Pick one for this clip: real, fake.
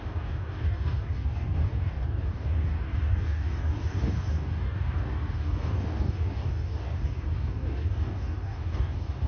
fake